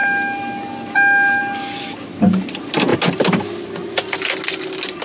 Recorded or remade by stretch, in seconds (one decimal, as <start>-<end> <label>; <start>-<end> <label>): 0.0-1.4 recorded; 1.4-2.9 remade; 2.9-5.0 recorded